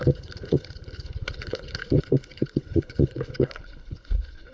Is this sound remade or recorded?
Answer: remade